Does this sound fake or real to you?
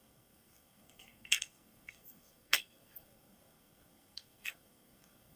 fake